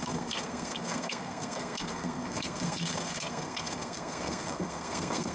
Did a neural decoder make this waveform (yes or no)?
yes